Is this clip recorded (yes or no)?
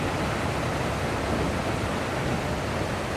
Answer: yes